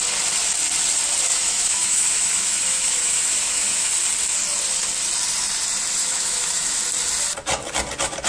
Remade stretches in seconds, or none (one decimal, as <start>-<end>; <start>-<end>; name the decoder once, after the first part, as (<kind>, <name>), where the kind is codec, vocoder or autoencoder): 1.3-3.9 (autoencoder, DAC-VAE); 6.0-6.8